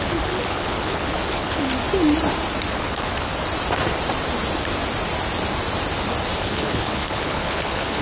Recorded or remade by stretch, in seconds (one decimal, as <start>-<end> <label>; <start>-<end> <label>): 0.0-1.7 remade; 1.7-2.7 recorded; 2.7-3.3 remade; 3.3-6.4 recorded; 6.4-8.0 remade